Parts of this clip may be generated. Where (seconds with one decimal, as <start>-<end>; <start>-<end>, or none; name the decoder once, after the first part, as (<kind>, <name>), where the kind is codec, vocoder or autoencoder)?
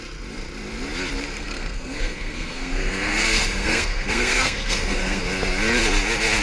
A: 1.4-5.2 (codec, SNAC)